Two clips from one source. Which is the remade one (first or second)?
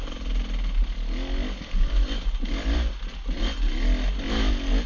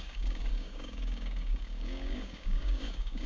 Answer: second